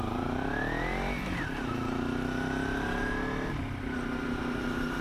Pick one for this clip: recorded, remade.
recorded